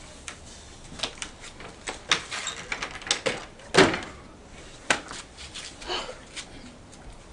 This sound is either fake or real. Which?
real